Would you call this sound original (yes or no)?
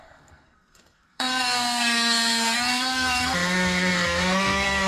no